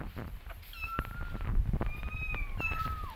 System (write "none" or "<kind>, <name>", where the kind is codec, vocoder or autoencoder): none